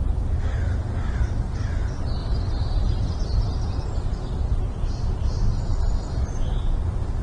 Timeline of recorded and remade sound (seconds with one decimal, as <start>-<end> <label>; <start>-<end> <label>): 0.0-2.2 recorded; 2.2-3.2 remade; 3.2-4.1 recorded; 4.1-5.4 remade; 5.4-7.2 recorded